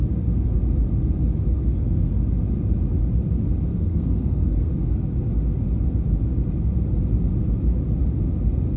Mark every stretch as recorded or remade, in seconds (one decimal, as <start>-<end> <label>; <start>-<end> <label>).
0.0-1.5 recorded; 1.5-2.1 remade; 2.1-3.7 recorded; 3.7-4.7 remade; 4.7-8.8 recorded